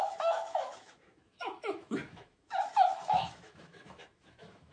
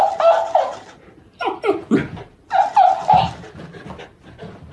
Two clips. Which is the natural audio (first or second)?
second